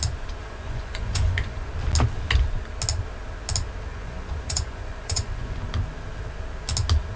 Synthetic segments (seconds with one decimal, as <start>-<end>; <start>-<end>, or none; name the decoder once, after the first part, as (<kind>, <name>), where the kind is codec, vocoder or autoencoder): 0.4-1.7 (vocoder, Vocos); 3.9-5.6